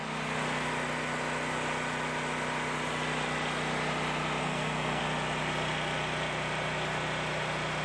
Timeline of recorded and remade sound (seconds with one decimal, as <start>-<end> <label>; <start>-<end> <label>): 0.0-4.4 recorded; 4.4-5.0 remade; 5.0-7.8 recorded